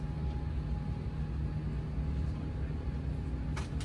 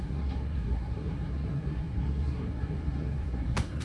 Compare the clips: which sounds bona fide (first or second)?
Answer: first